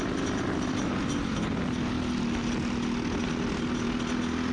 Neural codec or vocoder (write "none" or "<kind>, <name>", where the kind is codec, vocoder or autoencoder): none